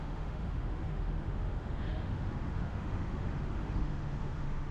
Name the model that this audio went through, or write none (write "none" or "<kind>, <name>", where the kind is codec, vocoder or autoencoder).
autoencoder, DAC-VAE